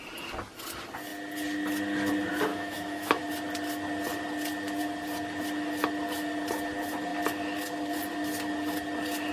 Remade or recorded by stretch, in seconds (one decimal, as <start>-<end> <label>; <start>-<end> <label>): 0.0-2.5 recorded; 2.5-3.2 remade; 3.2-9.3 recorded